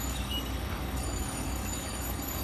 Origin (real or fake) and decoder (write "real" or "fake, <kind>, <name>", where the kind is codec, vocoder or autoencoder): fake, codec, DAC